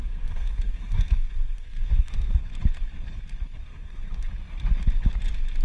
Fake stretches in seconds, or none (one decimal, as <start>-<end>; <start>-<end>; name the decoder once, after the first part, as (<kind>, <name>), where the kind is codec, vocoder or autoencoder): 0.0-2.4 (codec, SNAC); 3.7-4.3